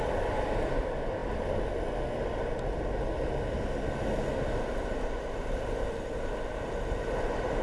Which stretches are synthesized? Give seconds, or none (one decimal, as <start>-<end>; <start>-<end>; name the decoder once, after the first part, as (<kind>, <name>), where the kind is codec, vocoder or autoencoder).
none